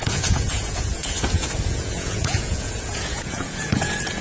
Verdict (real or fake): fake